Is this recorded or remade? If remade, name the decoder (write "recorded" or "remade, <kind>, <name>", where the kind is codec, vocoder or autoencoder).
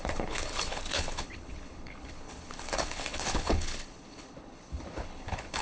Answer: remade, codec, HILCodec